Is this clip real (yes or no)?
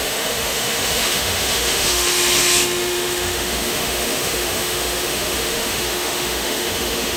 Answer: no